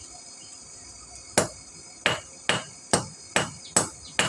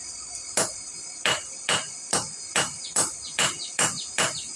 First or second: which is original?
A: first